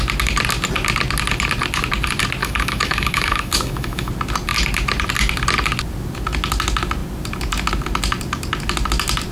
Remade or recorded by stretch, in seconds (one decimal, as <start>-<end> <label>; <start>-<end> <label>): 0.0-2.4 recorded; 2.4-4.1 remade; 4.1-9.3 recorded